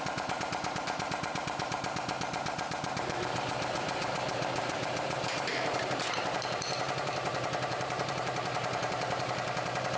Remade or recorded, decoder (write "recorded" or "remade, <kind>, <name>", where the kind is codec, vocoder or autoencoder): remade, vocoder, BigVGAN v2